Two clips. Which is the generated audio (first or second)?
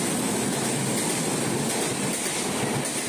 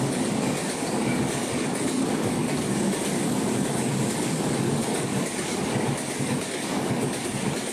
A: second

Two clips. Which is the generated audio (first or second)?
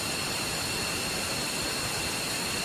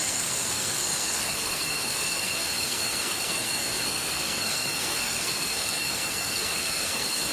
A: second